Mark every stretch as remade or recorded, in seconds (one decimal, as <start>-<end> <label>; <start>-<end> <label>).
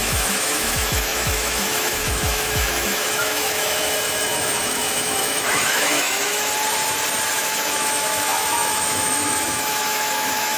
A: 0.0-6.5 remade; 6.5-7.3 recorded; 7.3-10.6 remade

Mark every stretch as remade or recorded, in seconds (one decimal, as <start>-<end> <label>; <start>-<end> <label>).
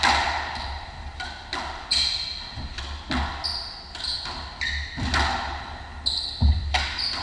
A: 0.0-7.2 recorded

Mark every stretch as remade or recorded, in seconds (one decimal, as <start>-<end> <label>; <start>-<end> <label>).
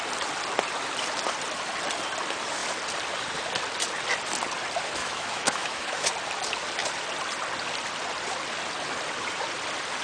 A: 0.0-5.0 recorded; 5.0-6.1 remade; 6.1-10.0 recorded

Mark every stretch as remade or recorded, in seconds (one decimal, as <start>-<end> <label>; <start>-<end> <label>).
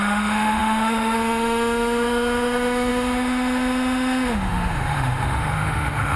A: 0.0-6.2 remade